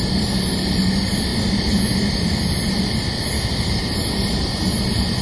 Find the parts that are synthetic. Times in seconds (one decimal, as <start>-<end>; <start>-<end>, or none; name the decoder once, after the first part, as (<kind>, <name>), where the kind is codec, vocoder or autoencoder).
none